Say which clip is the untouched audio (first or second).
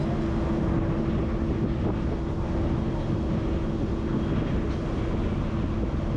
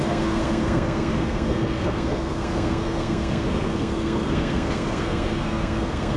first